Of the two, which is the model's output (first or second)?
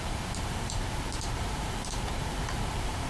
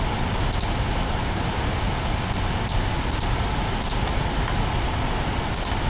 first